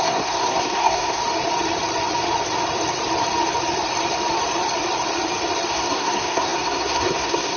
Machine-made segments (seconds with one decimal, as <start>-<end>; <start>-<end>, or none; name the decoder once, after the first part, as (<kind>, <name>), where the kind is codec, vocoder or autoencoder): 0.0-1.2 (codec, SNAC); 5.7-7.6